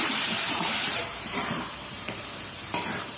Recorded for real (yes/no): no